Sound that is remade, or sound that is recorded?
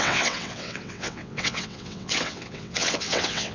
remade